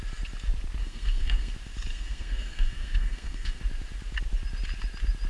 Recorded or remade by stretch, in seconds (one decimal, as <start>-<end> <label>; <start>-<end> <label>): 0.0-0.8 recorded; 0.8-1.5 remade; 1.5-1.9 recorded; 1.9-3.6 remade; 3.6-5.3 recorded